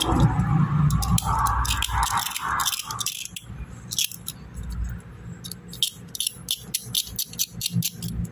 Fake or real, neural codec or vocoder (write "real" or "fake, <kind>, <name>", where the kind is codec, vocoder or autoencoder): real